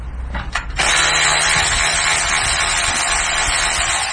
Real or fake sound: real